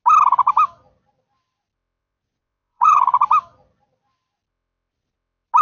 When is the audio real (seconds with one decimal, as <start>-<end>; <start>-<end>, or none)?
0.0-2.0; 3.2-5.6